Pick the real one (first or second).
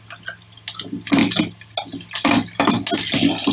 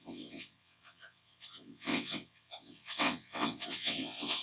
first